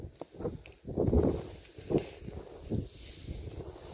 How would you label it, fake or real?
real